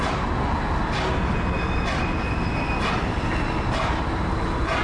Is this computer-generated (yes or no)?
no